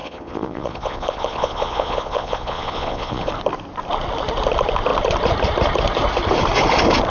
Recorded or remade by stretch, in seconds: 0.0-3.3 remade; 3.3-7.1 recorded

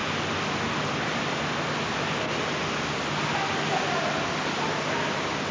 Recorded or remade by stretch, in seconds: 0.0-5.5 recorded

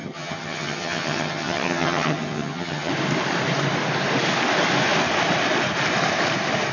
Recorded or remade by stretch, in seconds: 0.0-2.9 remade; 2.9-6.7 recorded

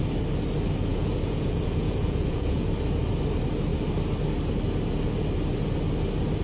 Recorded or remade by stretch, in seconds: 0.0-0.9 recorded; 0.9-2.7 remade; 2.7-6.4 recorded

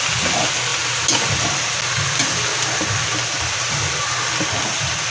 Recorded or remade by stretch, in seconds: 0.0-0.7 recorded; 0.7-1.7 remade; 1.7-2.5 recorded; 2.5-3.7 remade; 3.7-5.1 recorded

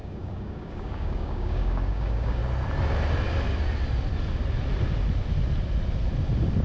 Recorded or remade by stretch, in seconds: 0.0-2.4 remade; 2.4-6.6 recorded